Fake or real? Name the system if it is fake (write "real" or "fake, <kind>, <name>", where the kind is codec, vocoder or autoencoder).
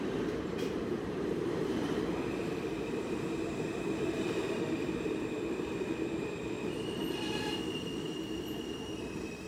fake, vocoder, BigVGAN v2